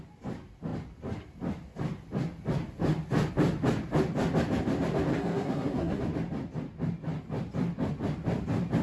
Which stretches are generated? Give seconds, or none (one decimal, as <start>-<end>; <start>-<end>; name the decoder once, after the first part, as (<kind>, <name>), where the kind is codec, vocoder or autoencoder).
5.1-6.0 (codec, SNAC)